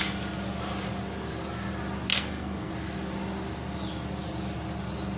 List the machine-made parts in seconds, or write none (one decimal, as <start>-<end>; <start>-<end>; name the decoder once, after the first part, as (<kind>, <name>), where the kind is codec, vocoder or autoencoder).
2.1-2.7 (codec, SNAC)